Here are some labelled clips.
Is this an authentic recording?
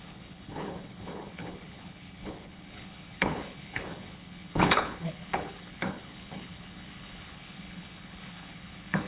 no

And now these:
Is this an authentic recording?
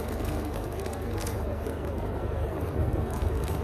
no